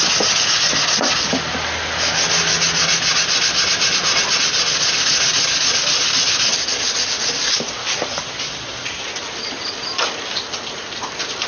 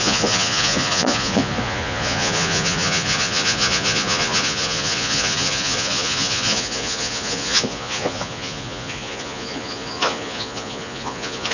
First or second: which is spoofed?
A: second